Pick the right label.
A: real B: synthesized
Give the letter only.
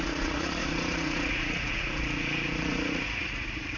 B